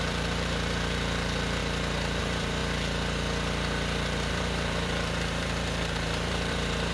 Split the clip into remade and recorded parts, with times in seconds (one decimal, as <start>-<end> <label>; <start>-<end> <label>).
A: 0.0-1.6 remade; 1.6-2.2 recorded; 2.2-2.6 remade; 2.6-4.3 recorded; 4.3-6.9 remade